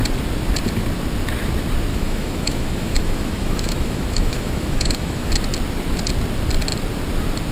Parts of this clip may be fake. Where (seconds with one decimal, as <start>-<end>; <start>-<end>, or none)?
1.9-5.3